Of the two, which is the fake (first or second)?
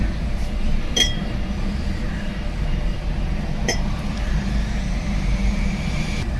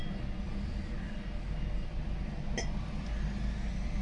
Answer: first